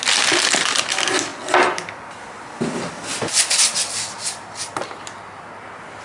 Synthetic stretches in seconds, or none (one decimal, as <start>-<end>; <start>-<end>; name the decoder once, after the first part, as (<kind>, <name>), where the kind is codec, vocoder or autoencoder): none

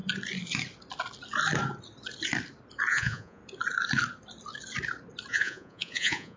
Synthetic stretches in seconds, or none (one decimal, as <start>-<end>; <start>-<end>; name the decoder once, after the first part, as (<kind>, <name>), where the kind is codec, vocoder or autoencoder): 2.9-3.4 (vocoder, Vocos); 5.3-6.4

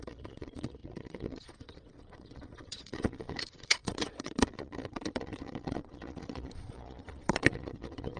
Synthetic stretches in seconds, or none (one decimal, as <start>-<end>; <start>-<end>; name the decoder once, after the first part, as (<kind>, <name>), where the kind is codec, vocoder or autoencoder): 0.0-8.2 (vocoder, Vocos)

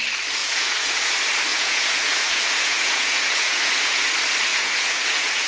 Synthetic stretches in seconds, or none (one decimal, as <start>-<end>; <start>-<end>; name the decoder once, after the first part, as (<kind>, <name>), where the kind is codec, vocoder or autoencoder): 0.4-1.1 (vocoder, Vocos); 1.5-4.0; 4.5-5.5

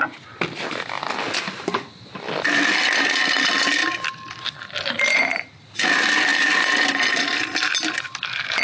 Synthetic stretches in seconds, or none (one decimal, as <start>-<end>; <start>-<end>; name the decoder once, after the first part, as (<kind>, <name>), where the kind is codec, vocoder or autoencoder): none

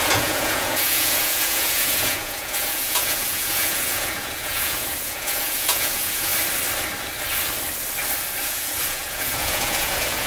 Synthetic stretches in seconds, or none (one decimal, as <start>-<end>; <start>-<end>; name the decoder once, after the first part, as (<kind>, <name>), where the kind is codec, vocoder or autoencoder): 0.0-6.3 (vocoder, Vocos); 8.4-10.3

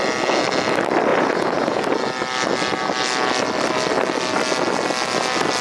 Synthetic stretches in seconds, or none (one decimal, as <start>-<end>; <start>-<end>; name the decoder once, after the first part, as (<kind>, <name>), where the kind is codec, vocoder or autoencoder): 1.1-1.8 (vocoder, Vocos)

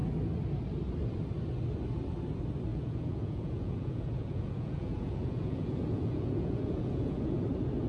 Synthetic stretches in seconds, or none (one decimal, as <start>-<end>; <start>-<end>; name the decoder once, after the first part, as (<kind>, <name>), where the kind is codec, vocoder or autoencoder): 2.7-7.4 (vocoder, Vocos)